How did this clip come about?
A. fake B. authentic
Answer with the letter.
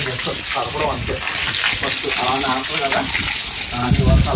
B